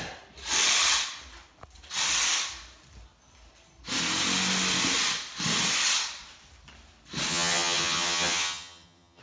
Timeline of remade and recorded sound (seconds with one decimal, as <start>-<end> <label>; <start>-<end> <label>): 0.0-7.3 recorded; 7.3-9.2 remade